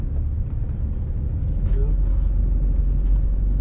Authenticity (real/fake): real